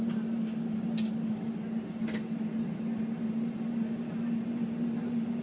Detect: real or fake real